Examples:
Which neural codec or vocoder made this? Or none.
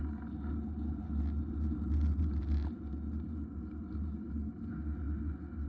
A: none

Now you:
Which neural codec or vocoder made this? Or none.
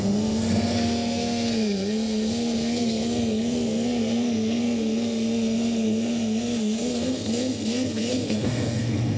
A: codec, SNAC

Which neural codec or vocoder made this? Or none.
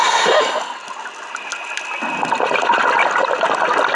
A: none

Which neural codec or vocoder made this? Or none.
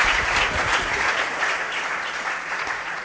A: vocoder, Vocos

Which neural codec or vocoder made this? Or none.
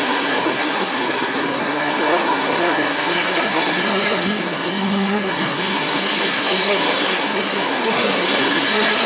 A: codec, SNAC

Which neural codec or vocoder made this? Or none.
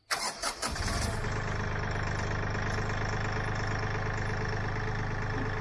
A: none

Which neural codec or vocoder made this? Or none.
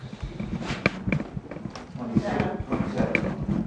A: none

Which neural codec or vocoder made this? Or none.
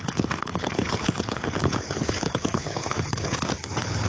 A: codec, HILCodec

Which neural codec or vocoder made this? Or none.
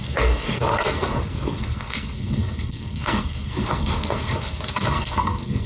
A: codec, SNAC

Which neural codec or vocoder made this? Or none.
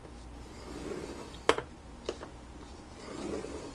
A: none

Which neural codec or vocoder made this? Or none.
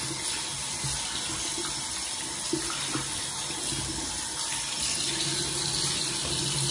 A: none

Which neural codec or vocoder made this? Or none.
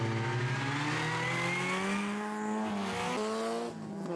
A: none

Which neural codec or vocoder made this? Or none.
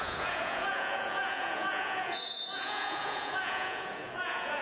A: vocoder, Vocos